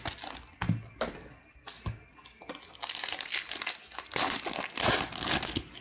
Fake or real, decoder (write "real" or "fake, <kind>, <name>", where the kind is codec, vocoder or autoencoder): real